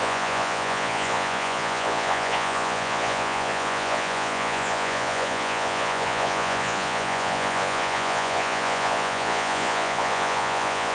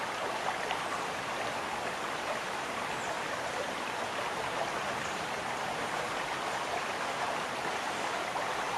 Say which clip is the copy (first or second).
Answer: first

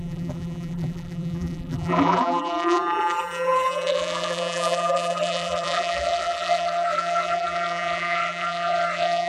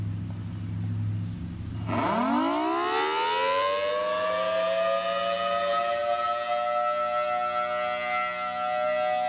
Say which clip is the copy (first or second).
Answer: first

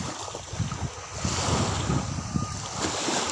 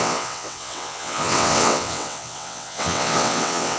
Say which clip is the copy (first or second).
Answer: second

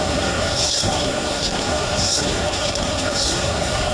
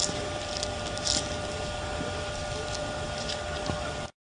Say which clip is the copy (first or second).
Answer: first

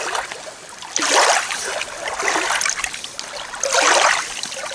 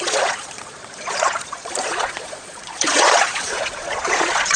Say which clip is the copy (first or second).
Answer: second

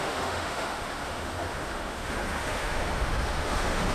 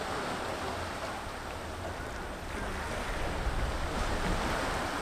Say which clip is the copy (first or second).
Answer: first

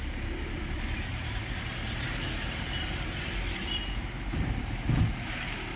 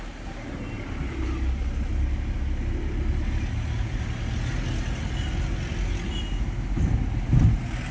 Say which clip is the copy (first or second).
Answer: first